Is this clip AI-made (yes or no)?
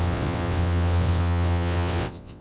yes